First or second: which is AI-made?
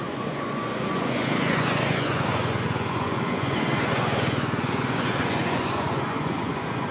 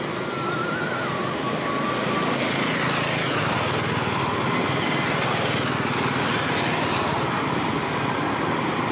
first